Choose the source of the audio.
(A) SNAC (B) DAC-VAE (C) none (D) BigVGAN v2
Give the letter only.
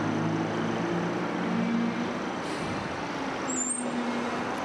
C